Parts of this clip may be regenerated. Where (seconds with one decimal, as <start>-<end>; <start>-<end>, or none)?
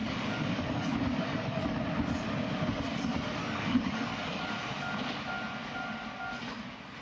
0.0-1.8; 3.4-4.4